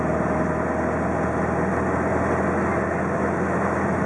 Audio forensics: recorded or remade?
recorded